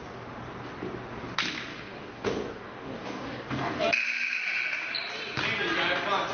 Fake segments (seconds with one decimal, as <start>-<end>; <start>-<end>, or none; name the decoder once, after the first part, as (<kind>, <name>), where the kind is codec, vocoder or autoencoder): 1.7-3.8 (codec, DAC)